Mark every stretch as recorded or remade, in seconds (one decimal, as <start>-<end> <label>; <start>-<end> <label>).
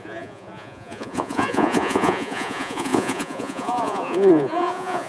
0.0-5.1 remade